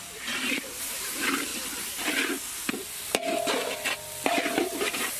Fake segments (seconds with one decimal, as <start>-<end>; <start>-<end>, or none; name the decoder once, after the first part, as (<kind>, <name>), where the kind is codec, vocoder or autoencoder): 0.0-1.5 (vocoder, BigVGAN v2); 4.6-5.2